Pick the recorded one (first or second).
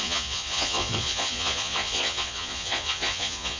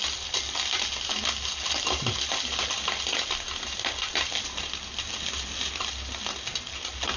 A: second